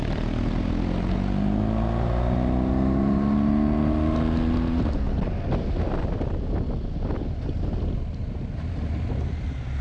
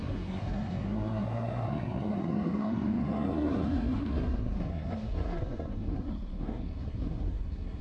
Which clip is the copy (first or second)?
second